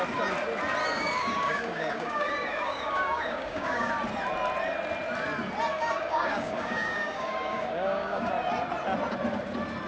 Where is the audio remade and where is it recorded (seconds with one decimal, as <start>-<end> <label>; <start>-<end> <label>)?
0.0-0.8 recorded; 0.8-3.9 remade; 3.9-5.7 recorded; 5.7-8.3 remade; 8.3-9.9 recorded